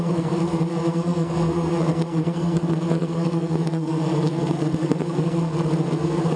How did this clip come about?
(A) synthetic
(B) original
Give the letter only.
A